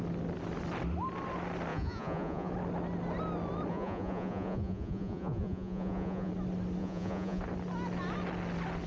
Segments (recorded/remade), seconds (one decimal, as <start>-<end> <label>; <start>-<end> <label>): 0.0-1.7 recorded; 1.7-2.5 remade; 2.5-3.7 recorded; 3.7-6.3 remade; 6.3-6.8 recorded; 6.8-7.4 remade; 7.4-8.9 recorded